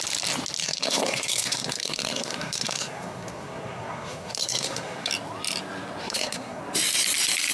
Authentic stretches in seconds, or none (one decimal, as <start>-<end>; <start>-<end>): 0.0-0.6; 5.1-6.0; 6.6-7.5